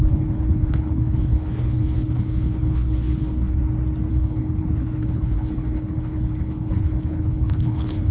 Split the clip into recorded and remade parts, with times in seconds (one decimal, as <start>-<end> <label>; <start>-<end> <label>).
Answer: 0.0-3.6 remade; 3.6-4.1 recorded; 4.1-8.1 remade

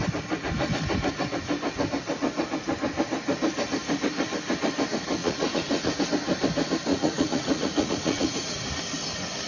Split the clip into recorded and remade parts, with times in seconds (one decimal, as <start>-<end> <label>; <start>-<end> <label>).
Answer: 0.0-5.2 recorded; 5.2-6.0 remade; 6.0-6.9 recorded; 6.9-8.7 remade; 8.7-9.5 recorded

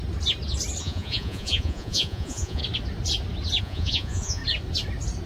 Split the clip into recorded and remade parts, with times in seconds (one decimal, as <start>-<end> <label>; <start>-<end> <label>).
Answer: 0.0-0.8 recorded; 0.8-2.6 remade; 2.6-3.6 recorded; 3.6-4.4 remade; 4.4-5.3 recorded

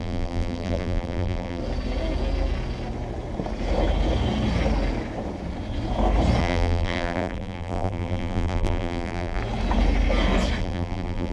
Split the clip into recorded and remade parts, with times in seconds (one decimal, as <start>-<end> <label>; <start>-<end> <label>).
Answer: 0.0-1.6 remade; 1.6-6.4 recorded; 6.4-9.4 remade; 9.4-10.6 recorded; 10.6-11.3 remade

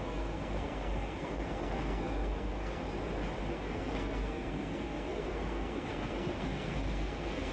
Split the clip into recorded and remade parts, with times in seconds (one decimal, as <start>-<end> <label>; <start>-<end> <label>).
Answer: 0.0-2.8 remade; 2.8-3.5 recorded; 3.5-7.5 remade

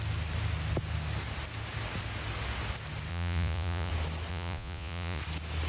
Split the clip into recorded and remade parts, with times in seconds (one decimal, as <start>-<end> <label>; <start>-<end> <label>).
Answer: 0.0-3.1 recorded; 3.1-3.9 remade; 3.9-4.3 recorded; 4.3-5.2 remade; 5.2-5.7 recorded

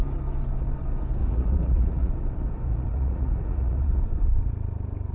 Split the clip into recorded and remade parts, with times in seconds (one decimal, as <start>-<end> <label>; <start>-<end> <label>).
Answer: 0.0-1.2 recorded; 1.2-2.1 remade; 2.1-2.7 recorded; 2.7-4.0 remade; 4.0-5.1 recorded